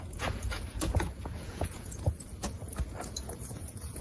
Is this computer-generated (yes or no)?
yes